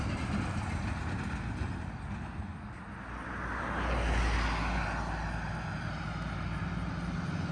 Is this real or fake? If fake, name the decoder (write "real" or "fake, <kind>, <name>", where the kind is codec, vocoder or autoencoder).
real